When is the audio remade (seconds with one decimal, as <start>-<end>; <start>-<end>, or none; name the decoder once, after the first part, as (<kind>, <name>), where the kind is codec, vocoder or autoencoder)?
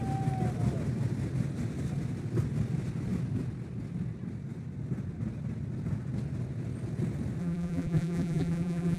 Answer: 7.4-9.0 (vocoder, BigVGAN v2)